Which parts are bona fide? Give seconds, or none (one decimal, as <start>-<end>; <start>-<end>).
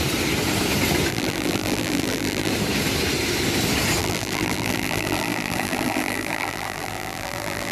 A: 0.0-1.1; 2.5-4.0